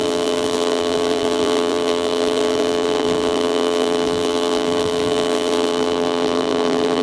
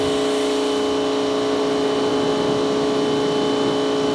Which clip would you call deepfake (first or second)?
first